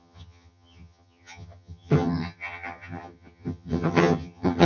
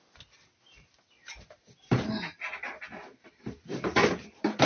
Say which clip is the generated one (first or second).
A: first